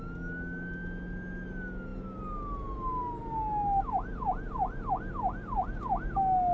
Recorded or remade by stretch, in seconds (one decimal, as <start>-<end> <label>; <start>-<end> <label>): 0.0-6.5 recorded